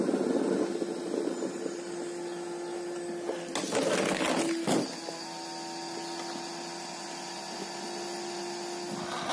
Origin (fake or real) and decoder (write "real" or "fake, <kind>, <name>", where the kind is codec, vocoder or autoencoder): real